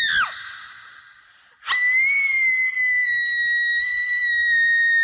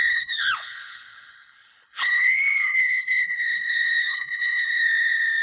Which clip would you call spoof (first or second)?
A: second